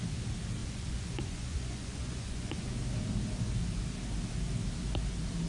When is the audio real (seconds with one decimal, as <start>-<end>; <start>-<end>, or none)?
0.0-0.6; 2.7-5.5